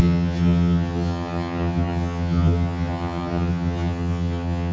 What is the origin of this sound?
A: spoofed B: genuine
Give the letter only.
A